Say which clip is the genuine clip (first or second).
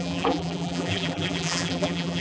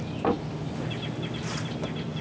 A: second